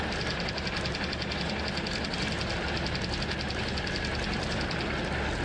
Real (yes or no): yes